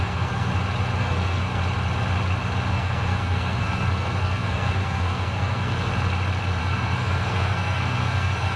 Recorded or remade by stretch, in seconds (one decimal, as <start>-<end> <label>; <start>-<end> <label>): 0.0-0.5 remade; 0.5-1.0 recorded; 1.0-1.6 remade; 1.6-2.7 recorded; 2.7-5.9 remade; 5.9-6.6 recorded; 6.6-8.6 remade